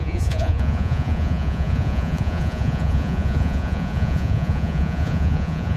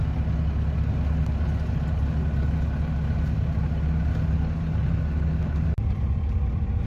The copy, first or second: first